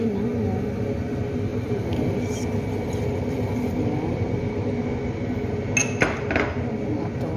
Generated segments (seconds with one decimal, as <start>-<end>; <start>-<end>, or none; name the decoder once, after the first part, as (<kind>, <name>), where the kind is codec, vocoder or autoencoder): 1.5-4.0 (vocoder, BigVGAN v2)